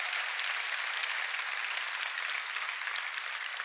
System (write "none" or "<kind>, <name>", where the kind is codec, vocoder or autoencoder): none